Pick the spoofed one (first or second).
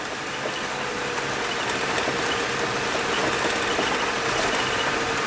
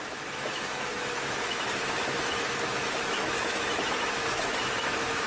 second